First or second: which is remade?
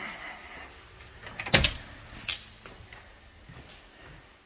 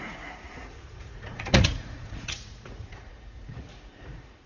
second